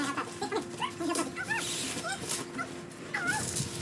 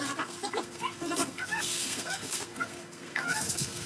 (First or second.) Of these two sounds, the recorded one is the first